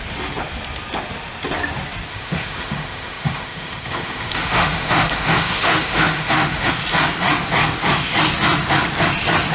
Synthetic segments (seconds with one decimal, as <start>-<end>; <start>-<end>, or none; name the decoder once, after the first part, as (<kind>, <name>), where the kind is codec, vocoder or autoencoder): 2.1-6.7 (autoencoder, DAC-VAE)